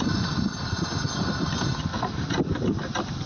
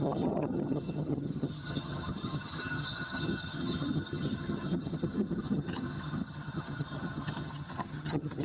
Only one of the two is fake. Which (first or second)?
second